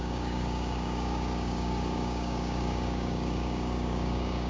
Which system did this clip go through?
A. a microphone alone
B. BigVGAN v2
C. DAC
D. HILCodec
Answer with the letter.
C